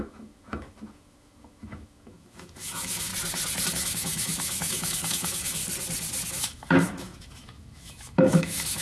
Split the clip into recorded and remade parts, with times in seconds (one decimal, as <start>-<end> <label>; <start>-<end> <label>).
0.0-3.1 remade; 3.1-3.7 recorded; 3.7-5.6 remade; 5.6-6.3 recorded; 6.3-8.8 remade